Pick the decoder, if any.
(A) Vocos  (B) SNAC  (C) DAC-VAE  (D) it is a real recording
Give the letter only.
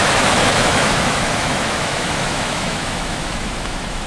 C